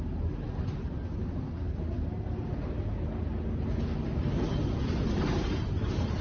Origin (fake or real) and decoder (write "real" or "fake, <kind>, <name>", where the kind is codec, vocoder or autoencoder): real